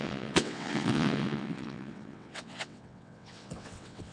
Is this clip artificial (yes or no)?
yes